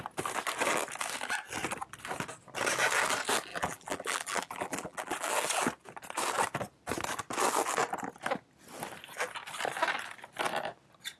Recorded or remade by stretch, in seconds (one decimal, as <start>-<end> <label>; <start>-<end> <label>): 0.0-3.5 recorded; 3.5-5.3 remade; 5.3-11.2 recorded